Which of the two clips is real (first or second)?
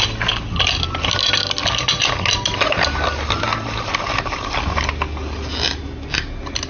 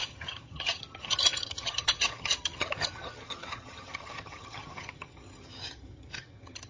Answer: first